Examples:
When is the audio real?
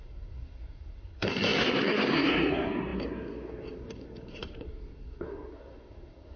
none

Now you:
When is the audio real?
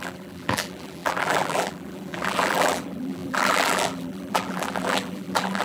none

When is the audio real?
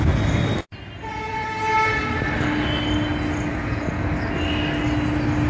0.0-1.0; 1.5-3.5; 4.1-5.5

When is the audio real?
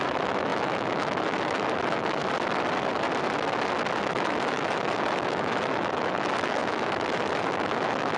2.2-4.0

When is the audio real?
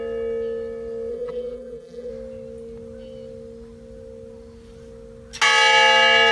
0.0-1.1; 2.1-6.3